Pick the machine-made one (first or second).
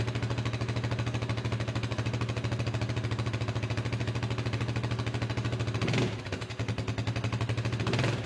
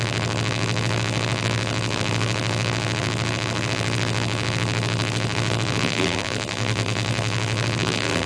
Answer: second